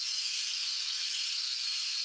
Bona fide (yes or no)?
no